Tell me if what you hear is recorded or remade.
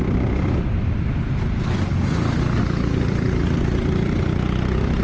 recorded